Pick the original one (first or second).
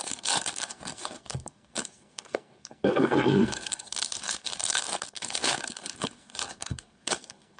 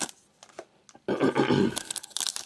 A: second